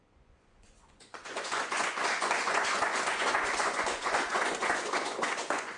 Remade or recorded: remade